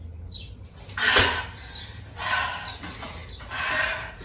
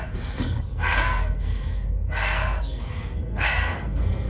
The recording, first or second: first